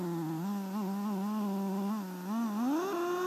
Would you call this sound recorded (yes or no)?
yes